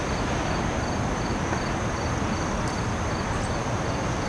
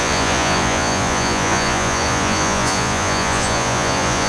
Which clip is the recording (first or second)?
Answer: first